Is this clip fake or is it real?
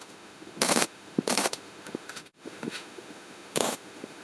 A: fake